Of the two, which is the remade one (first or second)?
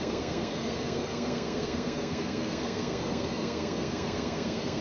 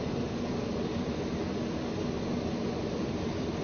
first